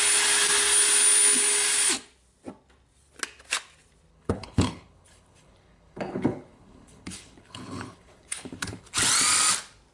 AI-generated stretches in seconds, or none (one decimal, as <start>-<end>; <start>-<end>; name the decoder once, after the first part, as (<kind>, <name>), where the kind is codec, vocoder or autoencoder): 4.1-8.9 (codec, HILCodec)